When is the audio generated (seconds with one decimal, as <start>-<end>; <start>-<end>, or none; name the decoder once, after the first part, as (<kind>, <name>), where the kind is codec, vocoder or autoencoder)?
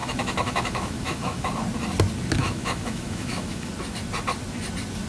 0.0-1.5 (autoencoder, DAC-VAE); 2.4-3.7